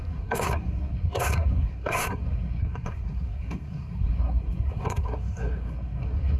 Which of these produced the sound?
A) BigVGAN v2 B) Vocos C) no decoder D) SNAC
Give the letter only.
D